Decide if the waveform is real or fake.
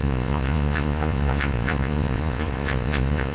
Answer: fake